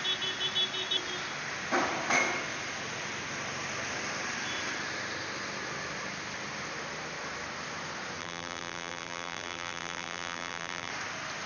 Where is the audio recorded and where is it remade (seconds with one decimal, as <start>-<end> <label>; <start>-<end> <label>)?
0.0-8.2 recorded; 8.2-10.9 remade; 10.9-11.5 recorded